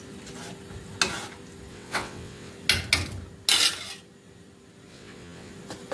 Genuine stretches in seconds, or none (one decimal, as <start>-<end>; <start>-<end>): 0.0-1.7; 2.5-4.9; 5.5-5.9